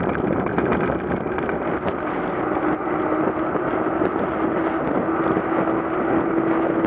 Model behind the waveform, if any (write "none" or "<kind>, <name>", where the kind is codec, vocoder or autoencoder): none